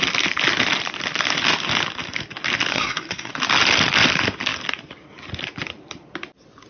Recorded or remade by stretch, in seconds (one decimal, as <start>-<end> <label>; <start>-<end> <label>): 0.0-2.7 recorded; 2.7-3.3 remade; 3.3-6.7 recorded